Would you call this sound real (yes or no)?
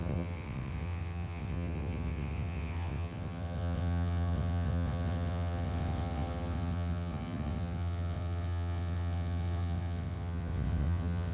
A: no